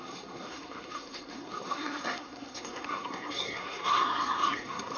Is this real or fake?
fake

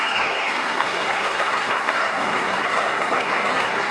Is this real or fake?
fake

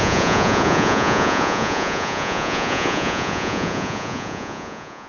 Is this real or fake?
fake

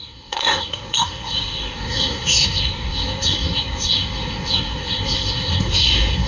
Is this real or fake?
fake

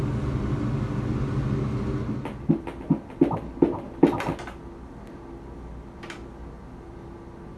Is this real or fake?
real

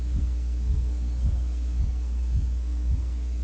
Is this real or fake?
fake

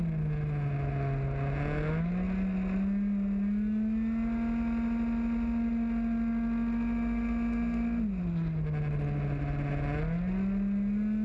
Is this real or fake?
real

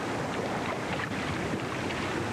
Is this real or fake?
real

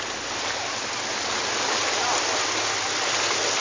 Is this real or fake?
real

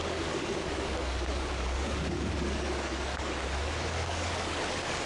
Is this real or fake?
fake